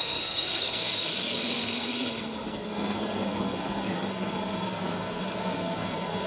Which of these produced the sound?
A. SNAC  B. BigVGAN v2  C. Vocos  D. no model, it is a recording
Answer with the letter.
A